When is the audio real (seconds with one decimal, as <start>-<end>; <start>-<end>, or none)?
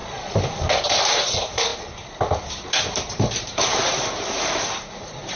1.7-2.8